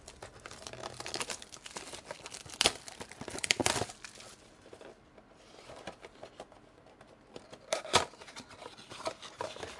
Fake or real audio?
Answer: real